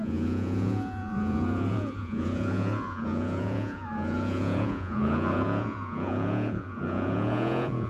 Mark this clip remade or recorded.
remade